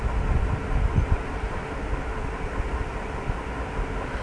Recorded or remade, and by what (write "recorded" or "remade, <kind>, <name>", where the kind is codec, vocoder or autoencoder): recorded